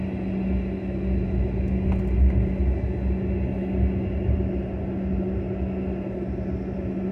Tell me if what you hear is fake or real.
real